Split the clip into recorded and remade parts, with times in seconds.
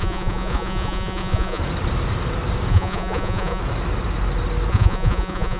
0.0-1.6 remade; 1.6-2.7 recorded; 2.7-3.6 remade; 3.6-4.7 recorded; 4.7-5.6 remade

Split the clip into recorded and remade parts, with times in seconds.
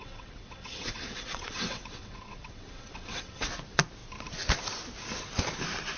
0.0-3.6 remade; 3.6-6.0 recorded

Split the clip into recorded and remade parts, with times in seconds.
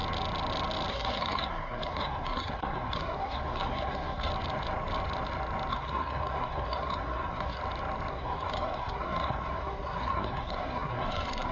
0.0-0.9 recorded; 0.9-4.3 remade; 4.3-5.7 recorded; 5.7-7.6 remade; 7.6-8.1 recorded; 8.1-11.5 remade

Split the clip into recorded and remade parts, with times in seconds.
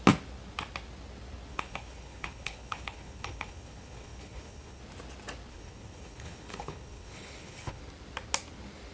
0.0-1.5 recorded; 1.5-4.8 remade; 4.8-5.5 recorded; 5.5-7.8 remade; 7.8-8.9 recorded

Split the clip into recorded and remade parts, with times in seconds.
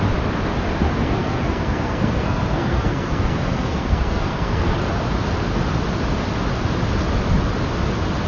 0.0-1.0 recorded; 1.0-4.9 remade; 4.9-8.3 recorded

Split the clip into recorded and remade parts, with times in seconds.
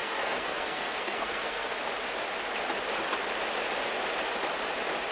0.0-1.7 remade; 1.7-5.1 recorded